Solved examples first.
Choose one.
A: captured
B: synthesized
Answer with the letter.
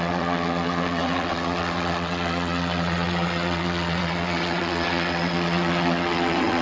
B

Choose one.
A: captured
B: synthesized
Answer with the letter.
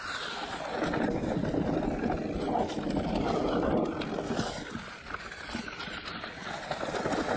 A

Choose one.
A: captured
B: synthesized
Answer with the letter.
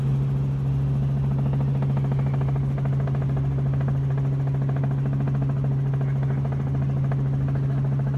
A